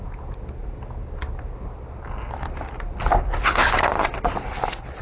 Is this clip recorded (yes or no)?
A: yes